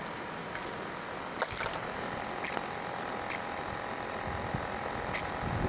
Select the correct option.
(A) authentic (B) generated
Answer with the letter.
A